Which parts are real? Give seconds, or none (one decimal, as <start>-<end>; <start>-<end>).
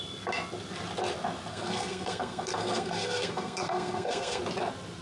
0.0-1.5; 4.4-5.0